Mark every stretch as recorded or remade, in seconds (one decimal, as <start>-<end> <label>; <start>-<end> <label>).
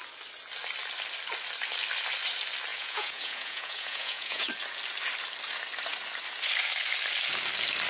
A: 0.0-2.7 recorded; 2.7-4.5 remade; 4.5-7.9 recorded